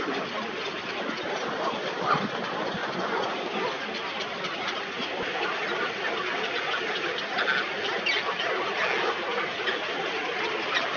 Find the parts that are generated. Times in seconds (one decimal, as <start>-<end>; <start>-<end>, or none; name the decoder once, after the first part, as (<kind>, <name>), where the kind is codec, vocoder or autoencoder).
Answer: 2.8-3.3 (vocoder, Vocos)